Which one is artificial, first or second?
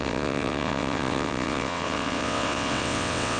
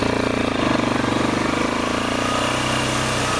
first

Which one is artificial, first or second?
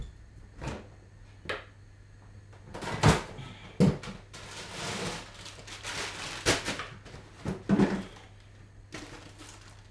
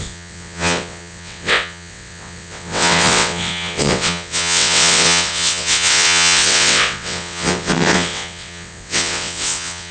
second